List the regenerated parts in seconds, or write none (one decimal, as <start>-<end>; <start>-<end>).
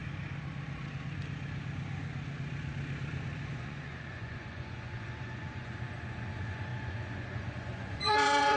3.5-8.6